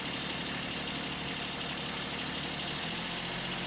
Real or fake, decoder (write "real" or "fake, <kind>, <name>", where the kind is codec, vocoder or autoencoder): real